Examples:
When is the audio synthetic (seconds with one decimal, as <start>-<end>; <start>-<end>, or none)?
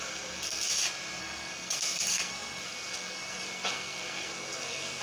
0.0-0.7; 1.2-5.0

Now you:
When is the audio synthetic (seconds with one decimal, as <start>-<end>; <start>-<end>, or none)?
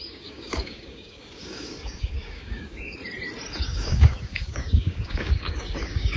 0.0-3.0; 3.6-6.2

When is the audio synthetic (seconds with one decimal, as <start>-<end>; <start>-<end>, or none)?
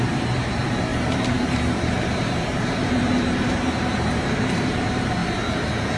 0.0-5.2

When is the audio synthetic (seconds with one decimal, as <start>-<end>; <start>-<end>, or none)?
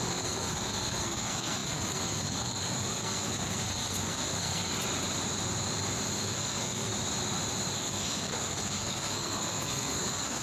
0.0-4.7; 6.2-6.9; 7.7-10.4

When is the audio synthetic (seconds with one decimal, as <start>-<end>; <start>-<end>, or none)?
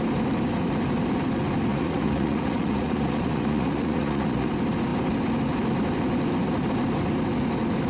1.7-4.5